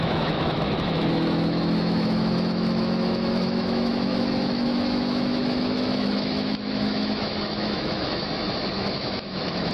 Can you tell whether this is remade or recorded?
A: remade